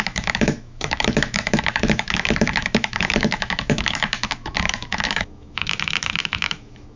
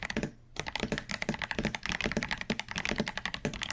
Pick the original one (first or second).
second